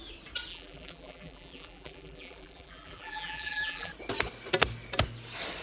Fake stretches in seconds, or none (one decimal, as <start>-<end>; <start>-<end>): 0.5-3.9